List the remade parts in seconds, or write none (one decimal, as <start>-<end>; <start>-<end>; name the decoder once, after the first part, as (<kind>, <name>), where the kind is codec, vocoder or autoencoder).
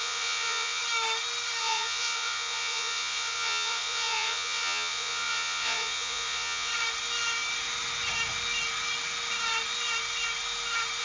0.0-0.8 (vocoder, Vocos); 1.6-6.7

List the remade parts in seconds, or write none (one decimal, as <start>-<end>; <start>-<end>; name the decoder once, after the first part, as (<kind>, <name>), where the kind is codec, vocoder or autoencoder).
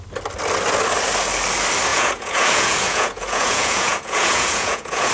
1.9-5.1 (vocoder, Vocos)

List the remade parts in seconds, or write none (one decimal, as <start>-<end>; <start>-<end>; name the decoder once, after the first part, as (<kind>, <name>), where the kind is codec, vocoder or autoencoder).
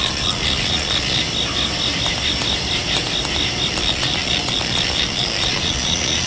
0.0-1.2 (vocoder, Vocos); 3.7-6.3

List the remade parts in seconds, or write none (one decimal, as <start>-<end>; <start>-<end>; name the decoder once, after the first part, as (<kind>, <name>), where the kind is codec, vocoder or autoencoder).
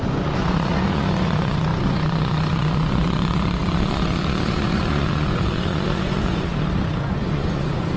0.0-6.5 (vocoder, Vocos); 7.1-8.0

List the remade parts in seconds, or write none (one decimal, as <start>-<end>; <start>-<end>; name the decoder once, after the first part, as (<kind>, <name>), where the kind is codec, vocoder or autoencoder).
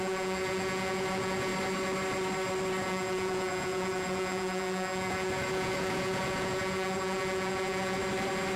0.0-1.5 (vocoder, Vocos); 2.8-8.0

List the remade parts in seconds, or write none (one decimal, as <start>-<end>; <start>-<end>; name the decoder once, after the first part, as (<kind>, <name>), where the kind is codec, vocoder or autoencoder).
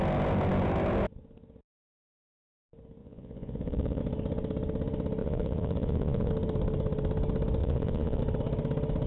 3.0-4.0 (vocoder, Vocos); 5.2-6.3; 7.6-8.2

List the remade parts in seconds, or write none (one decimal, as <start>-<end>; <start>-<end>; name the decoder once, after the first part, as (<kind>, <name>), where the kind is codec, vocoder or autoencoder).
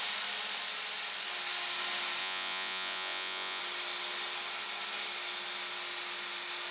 2.2-3.6 (vocoder, Vocos)